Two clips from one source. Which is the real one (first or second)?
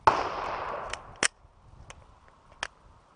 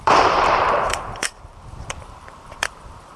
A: first